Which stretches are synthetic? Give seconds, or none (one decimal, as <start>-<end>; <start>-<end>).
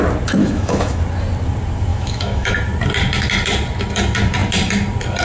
0.4-1.0; 1.9-2.5